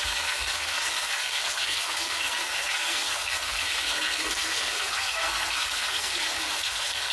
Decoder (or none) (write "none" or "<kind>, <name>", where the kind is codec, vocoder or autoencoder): codec, SNAC